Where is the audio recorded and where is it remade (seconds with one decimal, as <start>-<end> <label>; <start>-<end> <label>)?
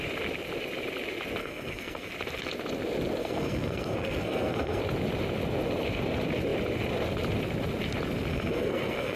0.0-1.4 recorded; 1.4-2.1 remade; 2.1-3.2 recorded; 3.2-4.8 remade; 4.8-8.3 recorded; 8.3-9.2 remade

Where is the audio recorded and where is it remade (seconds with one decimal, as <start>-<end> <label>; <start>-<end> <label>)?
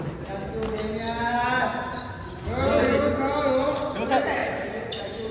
0.0-1.7 recorded; 1.7-2.3 remade; 2.3-4.4 recorded; 4.4-5.3 remade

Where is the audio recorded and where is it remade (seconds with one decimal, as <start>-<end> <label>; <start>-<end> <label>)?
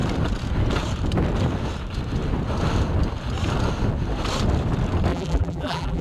0.0-5.1 recorded; 5.1-6.0 remade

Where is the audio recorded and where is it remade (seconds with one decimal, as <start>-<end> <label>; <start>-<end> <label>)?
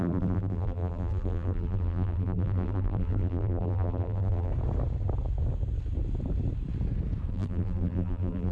0.0-4.5 remade; 4.5-7.3 recorded; 7.3-8.5 remade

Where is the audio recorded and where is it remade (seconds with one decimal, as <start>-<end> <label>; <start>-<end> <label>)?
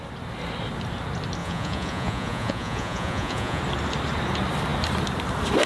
0.0-1.4 recorded; 1.4-3.6 remade; 3.6-5.7 recorded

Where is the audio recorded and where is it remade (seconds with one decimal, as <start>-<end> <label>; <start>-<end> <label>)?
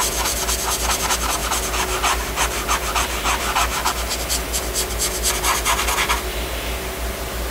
0.0-7.5 recorded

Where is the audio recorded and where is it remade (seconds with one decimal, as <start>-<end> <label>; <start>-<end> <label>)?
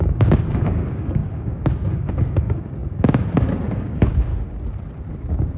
0.0-4.3 remade; 4.3-5.1 recorded; 5.1-5.6 remade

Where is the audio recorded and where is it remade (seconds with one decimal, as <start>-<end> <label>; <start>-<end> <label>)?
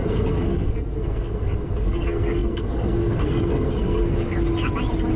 0.0-4.3 remade; 4.3-5.2 recorded